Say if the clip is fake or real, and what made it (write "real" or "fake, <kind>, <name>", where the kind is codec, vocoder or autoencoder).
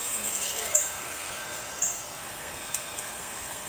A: fake, codec, SNAC